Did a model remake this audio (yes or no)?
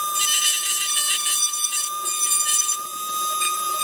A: yes